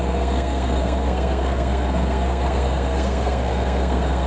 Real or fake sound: fake